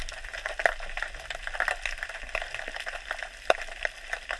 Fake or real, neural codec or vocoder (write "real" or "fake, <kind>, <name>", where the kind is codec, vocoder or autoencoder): real